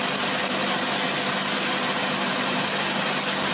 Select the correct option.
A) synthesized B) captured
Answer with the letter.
B